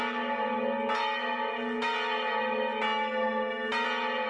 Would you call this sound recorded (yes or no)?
yes